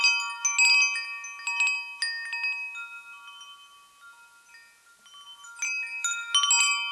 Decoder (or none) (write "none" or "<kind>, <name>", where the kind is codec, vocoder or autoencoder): none